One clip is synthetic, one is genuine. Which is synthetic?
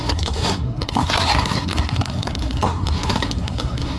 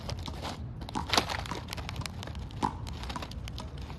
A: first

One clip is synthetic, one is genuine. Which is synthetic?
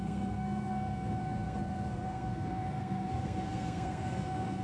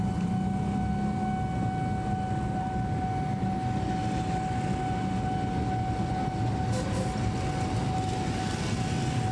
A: first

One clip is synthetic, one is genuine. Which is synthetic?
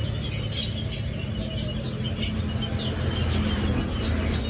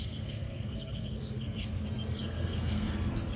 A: second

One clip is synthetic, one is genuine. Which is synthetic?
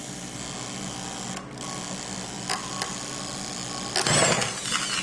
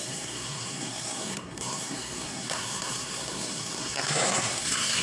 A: second